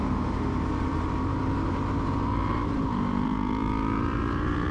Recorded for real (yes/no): no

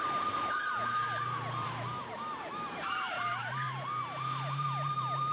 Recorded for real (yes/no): no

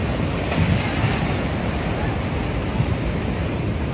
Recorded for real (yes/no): yes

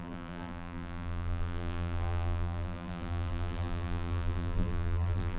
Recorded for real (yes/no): no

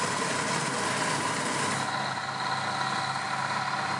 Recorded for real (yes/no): yes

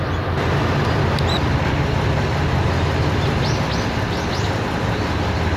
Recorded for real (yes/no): yes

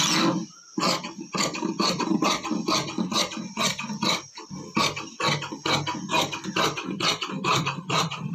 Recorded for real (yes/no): yes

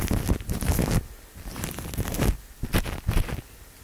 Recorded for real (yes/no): no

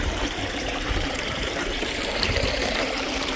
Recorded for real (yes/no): no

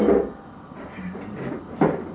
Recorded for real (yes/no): yes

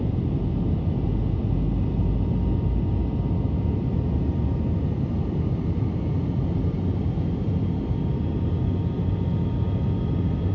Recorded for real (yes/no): yes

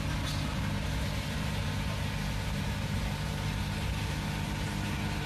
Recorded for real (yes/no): yes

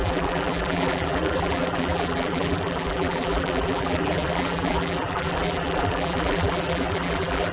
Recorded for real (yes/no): no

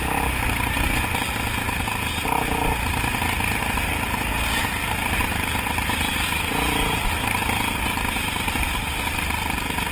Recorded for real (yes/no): yes